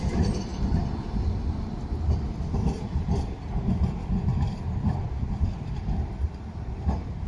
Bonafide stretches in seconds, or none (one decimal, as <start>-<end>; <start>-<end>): 0.0-7.3